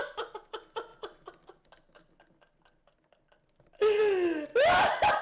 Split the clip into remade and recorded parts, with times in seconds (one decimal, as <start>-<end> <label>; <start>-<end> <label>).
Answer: 0.0-5.2 recorded